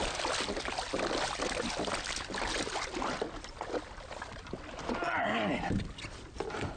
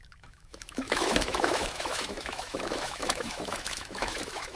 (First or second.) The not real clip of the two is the second